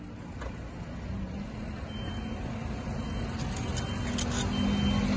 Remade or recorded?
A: recorded